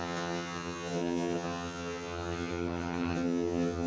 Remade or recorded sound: remade